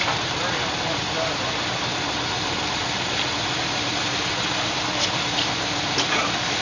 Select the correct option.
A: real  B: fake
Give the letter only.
A